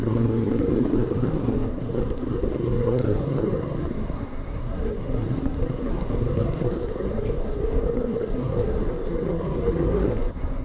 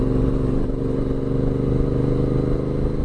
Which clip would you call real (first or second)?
second